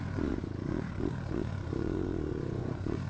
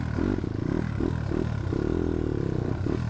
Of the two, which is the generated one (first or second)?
first